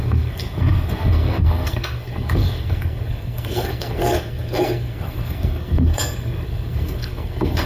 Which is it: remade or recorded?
remade